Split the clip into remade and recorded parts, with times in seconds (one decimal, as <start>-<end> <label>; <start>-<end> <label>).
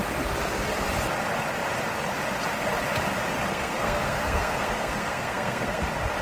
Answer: 0.0-3.5 recorded; 3.5-5.8 remade; 5.8-6.2 recorded